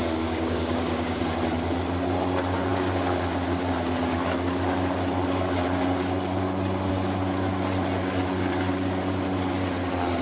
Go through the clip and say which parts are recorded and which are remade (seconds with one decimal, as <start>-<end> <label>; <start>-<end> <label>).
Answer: 0.0-1.2 remade; 1.2-10.2 recorded